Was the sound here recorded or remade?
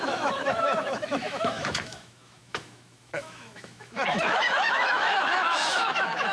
remade